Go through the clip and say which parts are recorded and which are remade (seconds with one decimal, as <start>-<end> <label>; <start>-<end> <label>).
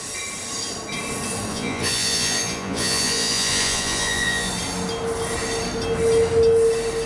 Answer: 0.0-1.5 recorded; 1.5-4.5 remade; 4.5-7.1 recorded